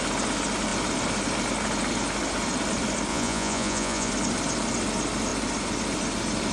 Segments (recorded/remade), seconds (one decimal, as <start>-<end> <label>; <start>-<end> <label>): 0.0-3.1 recorded; 3.1-4.1 remade; 4.1-6.5 recorded